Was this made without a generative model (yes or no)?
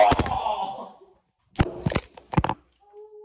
yes